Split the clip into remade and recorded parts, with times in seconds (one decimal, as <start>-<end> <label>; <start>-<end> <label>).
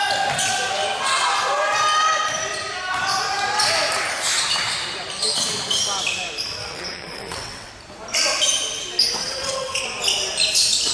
0.0-6.6 recorded; 6.6-7.7 remade; 7.7-9.2 recorded; 9.2-9.8 remade; 9.8-10.9 recorded